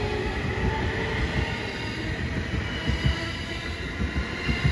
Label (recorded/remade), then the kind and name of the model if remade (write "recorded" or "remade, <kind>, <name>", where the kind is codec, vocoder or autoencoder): recorded